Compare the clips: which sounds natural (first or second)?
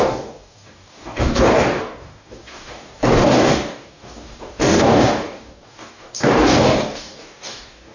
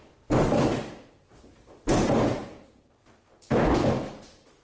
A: second